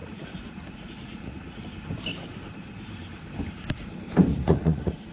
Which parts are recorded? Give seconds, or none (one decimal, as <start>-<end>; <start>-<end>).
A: 1.6-4.3